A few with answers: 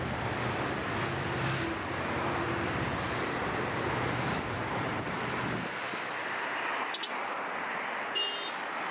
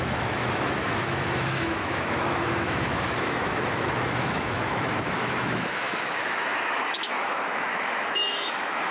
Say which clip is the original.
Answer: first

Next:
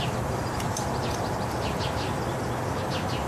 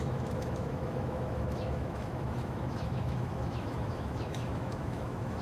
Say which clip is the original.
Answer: first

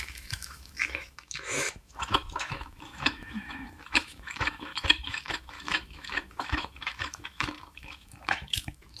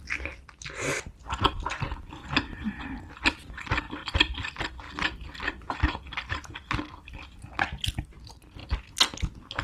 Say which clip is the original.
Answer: second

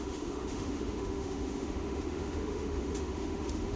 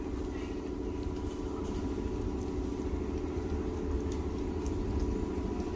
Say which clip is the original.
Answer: second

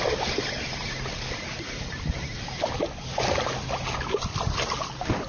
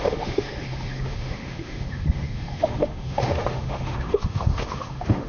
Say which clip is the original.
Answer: first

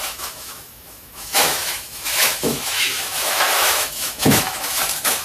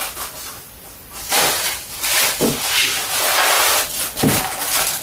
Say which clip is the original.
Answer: second